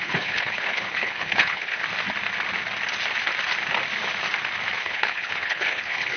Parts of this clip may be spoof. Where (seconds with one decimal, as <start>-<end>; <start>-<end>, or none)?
0.0-1.8; 4.8-6.2